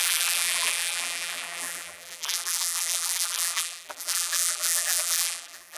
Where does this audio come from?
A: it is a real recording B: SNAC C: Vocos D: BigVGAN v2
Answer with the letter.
D